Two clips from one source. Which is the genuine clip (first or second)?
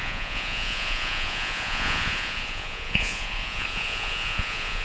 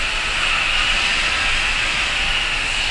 second